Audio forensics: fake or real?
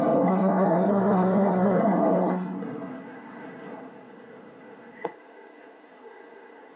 fake